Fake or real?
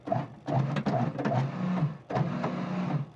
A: real